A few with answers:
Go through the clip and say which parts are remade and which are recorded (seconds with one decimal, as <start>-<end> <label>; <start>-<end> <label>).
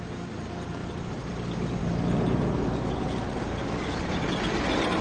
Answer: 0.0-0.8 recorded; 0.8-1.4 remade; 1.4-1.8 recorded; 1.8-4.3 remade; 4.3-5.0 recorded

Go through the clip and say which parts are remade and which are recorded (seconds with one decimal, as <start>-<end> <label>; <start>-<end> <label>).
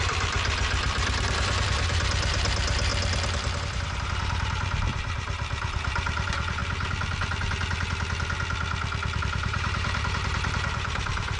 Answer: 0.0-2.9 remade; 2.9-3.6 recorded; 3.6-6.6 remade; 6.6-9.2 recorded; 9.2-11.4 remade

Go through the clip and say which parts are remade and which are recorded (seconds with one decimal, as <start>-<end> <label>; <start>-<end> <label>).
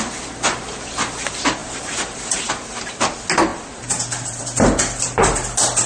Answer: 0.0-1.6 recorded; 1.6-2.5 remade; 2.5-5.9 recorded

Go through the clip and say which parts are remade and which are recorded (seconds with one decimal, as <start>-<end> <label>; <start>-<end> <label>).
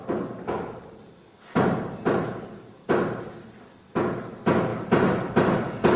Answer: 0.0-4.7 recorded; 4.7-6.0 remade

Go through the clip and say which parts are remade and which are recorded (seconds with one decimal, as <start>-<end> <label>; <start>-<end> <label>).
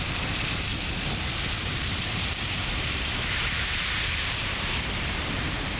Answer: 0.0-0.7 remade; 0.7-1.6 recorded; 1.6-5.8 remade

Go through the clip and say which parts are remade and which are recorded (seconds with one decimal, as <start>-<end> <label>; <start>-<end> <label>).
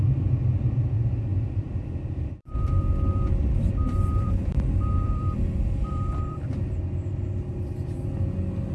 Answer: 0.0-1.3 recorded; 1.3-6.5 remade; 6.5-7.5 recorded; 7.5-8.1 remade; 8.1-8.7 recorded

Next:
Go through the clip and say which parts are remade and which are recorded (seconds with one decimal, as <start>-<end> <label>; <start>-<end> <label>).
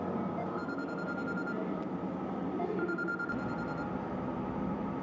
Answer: 0.0-3.1 recorded; 3.1-5.0 remade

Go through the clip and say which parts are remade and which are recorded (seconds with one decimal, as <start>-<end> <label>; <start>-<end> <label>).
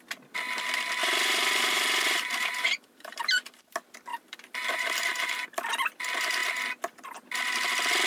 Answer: 0.0-1.0 recorded; 1.0-3.6 remade; 3.6-4.1 recorded; 4.1-5.7 remade; 5.7-8.1 recorded